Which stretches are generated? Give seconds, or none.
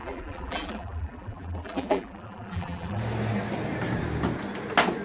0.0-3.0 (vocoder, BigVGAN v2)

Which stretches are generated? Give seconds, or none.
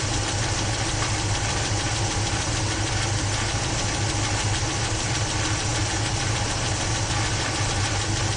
none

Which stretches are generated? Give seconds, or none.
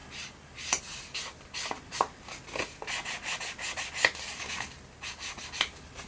none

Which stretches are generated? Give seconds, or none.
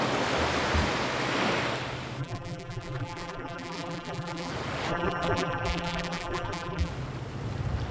2.2-4.5 (vocoder, BigVGAN v2); 4.9-6.9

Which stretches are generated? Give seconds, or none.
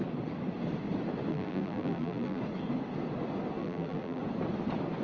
1.3-2.4 (vocoder, BigVGAN v2); 3.6-4.2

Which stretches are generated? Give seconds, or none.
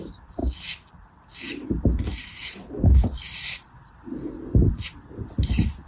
0.0-0.4 (vocoder, BigVGAN v2); 0.9-4.2; 4.7-5.9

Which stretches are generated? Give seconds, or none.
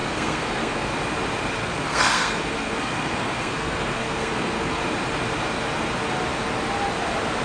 0.0-0.9 (codec, SNAC); 1.6-4.8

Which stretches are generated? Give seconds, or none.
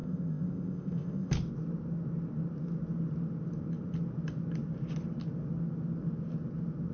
0.0-1.3 (codec, ZipCodec)